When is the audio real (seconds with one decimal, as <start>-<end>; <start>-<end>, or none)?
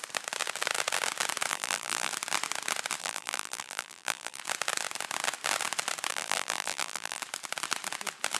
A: 0.0-1.5; 2.1-3.0; 4.4-6.1; 7.2-8.4